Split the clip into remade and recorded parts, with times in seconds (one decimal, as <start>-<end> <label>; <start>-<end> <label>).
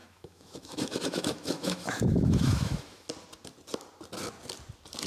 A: 0.0-3.1 remade; 3.1-5.1 recorded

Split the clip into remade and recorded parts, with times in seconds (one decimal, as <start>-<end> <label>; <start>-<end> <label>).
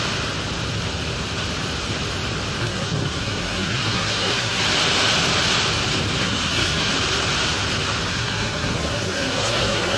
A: 0.0-2.6 recorded; 2.6-4.6 remade; 4.6-6.2 recorded; 6.2-6.9 remade; 6.9-8.1 recorded; 8.1-10.0 remade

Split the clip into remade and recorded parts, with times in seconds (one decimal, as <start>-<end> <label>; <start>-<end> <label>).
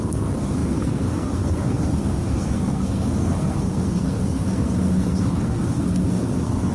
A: 0.0-6.7 remade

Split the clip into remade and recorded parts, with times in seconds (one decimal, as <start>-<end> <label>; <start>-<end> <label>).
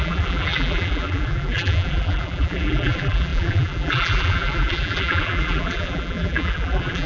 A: 0.0-7.1 remade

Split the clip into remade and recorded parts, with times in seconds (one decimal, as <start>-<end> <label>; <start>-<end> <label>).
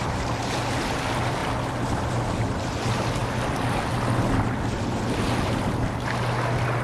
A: 0.0-6.8 recorded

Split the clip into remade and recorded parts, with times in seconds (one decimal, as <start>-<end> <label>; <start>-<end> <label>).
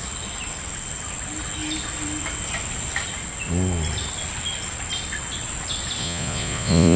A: 0.0-6.0 recorded; 6.0-7.0 remade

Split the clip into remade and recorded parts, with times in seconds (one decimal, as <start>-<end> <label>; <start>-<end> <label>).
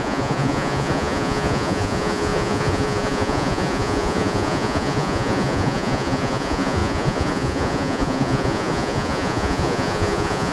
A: 0.0-10.5 remade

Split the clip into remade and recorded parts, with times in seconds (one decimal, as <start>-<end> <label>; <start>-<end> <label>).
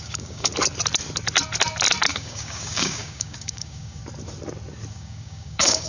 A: 0.0-0.5 remade; 0.5-2.1 recorded; 2.1-4.0 remade; 4.0-4.9 recorded; 4.9-5.9 remade